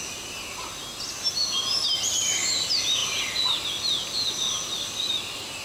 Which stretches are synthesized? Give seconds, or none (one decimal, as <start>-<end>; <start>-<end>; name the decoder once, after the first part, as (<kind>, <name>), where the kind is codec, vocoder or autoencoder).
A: none